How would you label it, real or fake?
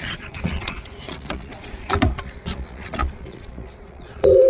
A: fake